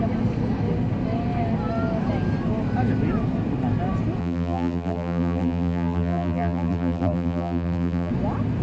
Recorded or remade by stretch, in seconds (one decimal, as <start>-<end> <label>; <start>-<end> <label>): 0.0-4.2 recorded; 4.2-8.1 remade; 8.1-8.6 recorded